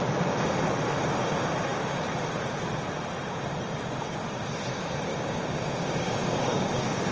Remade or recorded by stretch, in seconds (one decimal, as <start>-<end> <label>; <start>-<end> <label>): 0.0-5.1 recorded; 5.1-7.1 remade